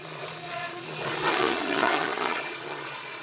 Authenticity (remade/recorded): remade